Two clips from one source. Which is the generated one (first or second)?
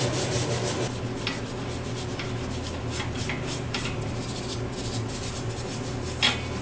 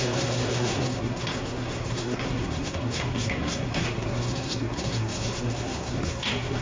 second